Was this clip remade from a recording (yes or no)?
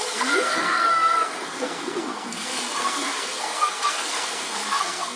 yes